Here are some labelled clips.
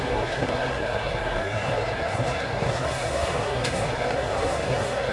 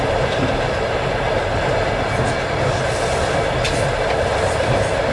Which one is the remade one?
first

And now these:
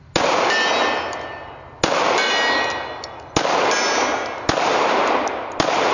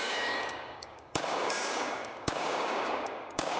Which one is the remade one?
second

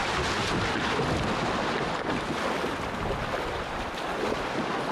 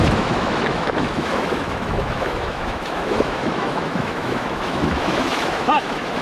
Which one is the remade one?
second